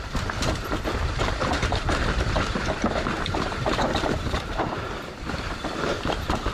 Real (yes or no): no